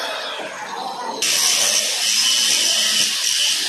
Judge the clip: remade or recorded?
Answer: recorded